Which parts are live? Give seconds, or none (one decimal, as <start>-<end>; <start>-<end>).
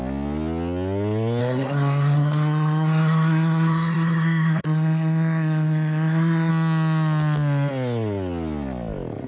0.0-1.4; 6.5-9.3